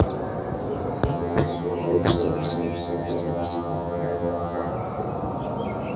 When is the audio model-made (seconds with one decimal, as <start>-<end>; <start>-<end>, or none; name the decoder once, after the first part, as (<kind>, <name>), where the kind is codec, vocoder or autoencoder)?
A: 1.1-4.7 (vocoder, HiFi-GAN)

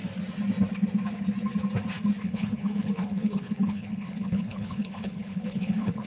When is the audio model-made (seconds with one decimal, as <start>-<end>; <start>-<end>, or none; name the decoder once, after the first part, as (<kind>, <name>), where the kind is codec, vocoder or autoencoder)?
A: 2.2-6.1 (codec, HILCodec)

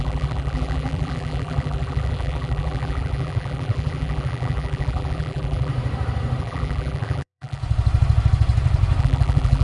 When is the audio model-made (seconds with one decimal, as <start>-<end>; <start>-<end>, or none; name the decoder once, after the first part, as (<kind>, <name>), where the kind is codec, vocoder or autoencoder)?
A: 0.0-5.7 (vocoder, BigVGAN v2); 6.4-7.6; 9.0-9.6

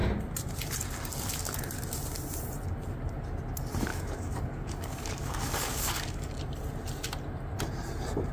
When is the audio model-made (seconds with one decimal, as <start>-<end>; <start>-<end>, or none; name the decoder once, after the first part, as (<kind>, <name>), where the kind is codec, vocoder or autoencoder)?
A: 3.9-6.3 (codec, DAC)

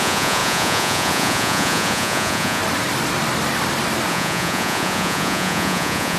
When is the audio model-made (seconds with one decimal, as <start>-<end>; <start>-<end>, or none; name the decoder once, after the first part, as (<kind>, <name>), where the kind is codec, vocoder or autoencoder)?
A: 0.0-2.6 (vocoder, Vocos); 4.1-6.2

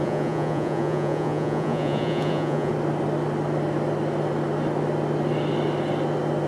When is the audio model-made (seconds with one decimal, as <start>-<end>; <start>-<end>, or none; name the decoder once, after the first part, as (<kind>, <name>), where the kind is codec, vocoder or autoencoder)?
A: 0.0-2.7 (vocoder, Vocos)